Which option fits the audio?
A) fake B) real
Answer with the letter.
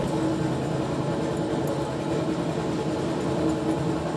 B